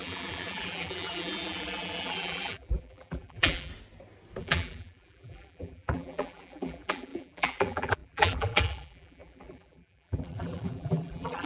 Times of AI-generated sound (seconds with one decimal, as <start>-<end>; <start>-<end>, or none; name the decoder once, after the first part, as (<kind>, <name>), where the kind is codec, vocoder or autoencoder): 0.0-3.7 (vocoder, BigVGAN v2); 4.4-11.5

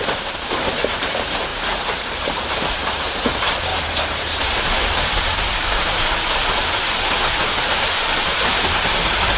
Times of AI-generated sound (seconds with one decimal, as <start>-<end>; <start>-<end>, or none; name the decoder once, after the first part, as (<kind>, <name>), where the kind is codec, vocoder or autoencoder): 0.0-6.4 (vocoder, BigVGAN v2); 7.7-9.4

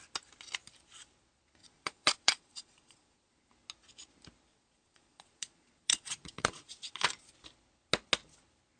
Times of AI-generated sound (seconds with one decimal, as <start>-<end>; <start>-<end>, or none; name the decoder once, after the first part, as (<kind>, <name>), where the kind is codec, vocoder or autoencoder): 1.6-3.5 (vocoder, Vocos); 4.5-7.1

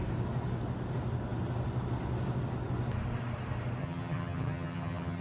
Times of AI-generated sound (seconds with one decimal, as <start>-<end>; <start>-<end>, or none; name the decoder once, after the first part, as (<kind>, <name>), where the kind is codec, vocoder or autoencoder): 3.8-5.2 (vocoder, HiFi-GAN)